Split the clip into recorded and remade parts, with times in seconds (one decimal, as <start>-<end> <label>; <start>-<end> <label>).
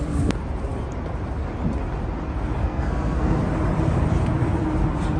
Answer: 0.0-2.6 recorded; 2.6-3.4 remade; 3.4-5.2 recorded